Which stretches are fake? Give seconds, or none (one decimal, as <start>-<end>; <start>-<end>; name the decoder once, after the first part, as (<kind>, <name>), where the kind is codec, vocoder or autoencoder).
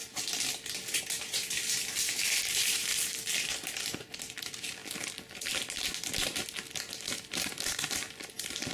1.0-2.9 (vocoder, BigVGAN v2); 4.2-4.8; 6.9-8.7